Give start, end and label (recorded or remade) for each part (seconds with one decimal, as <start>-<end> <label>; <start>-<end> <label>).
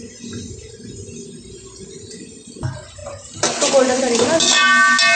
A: 0.0-5.2 recorded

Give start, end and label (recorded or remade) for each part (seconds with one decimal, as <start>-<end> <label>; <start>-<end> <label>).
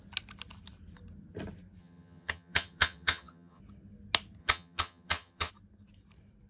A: 0.0-1.8 recorded; 1.8-3.6 remade; 3.6-4.4 recorded; 4.4-5.5 remade; 5.5-6.5 recorded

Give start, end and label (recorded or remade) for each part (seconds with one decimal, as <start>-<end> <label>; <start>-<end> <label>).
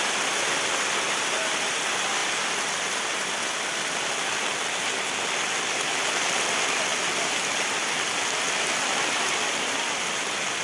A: 0.0-10.6 recorded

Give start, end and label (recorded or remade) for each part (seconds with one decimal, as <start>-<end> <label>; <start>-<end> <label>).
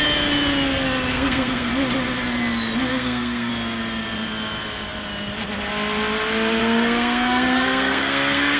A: 0.0-1.1 recorded; 1.1-1.7 remade; 1.7-2.9 recorded; 2.9-3.5 remade; 3.5-6.6 recorded; 6.6-8.6 remade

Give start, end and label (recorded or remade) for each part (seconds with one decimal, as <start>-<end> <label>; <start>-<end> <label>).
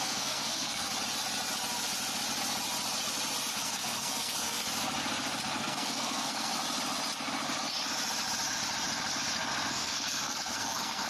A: 0.0-0.9 remade; 0.9-3.5 recorded; 3.5-4.6 remade; 4.6-5.6 recorded; 5.6-6.5 remade; 6.5-9.7 recorded; 9.7-11.1 remade